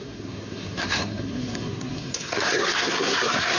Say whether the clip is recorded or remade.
remade